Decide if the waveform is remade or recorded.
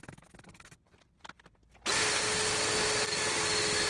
recorded